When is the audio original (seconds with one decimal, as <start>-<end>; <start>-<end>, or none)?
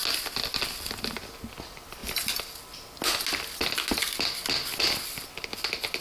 0.0-6.0